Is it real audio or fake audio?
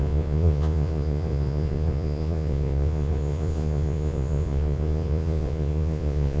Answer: fake